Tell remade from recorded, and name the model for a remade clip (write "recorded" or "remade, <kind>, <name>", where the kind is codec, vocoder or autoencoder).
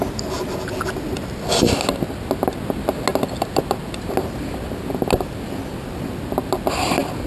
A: recorded